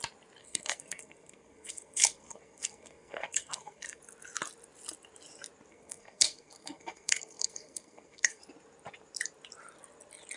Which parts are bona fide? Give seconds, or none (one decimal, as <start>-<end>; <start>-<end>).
0.0-0.4; 4.0-5.7; 8.4-10.4